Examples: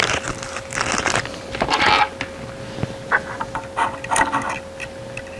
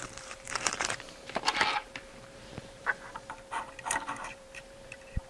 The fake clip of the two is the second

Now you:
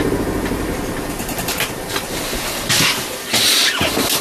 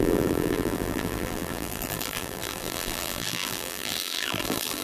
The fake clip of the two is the second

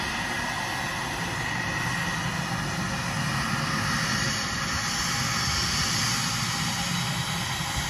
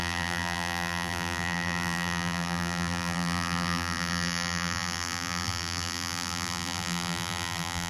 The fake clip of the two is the second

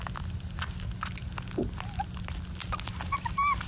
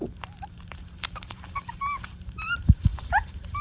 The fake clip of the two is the second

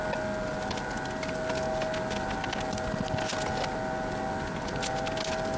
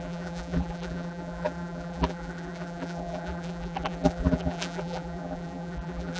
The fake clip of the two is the second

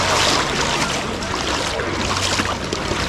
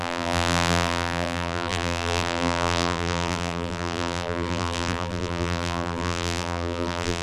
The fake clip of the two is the second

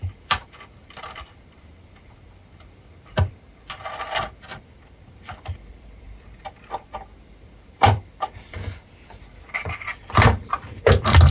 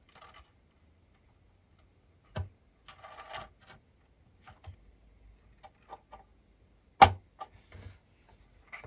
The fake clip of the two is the first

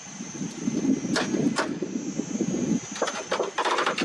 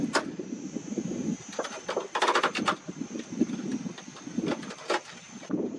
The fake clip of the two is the second